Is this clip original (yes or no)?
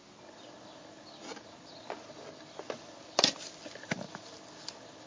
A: yes